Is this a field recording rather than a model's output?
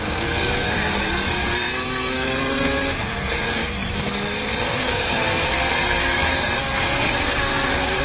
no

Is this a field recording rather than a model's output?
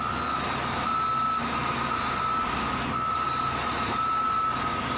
yes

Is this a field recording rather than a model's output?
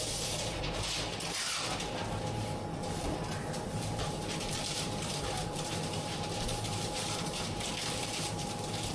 no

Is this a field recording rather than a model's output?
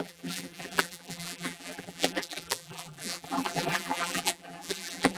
no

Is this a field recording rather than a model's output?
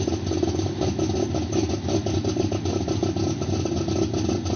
yes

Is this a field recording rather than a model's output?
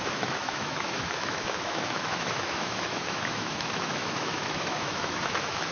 no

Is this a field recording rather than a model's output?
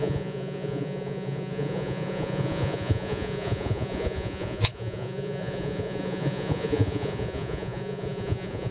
no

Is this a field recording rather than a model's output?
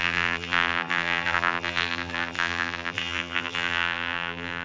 no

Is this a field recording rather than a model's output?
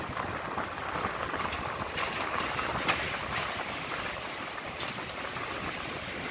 yes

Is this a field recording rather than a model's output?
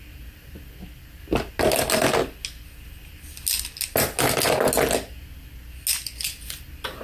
yes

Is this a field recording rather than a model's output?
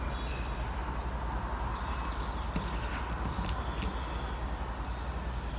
yes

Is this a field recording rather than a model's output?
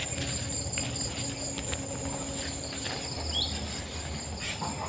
yes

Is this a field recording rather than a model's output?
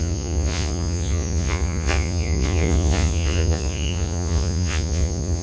no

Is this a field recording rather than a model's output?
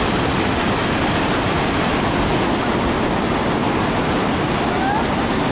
yes